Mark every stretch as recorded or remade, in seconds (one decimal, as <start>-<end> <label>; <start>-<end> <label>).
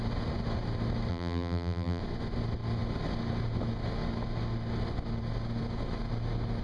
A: 0.0-1.1 recorded; 1.1-2.0 remade; 2.0-6.6 recorded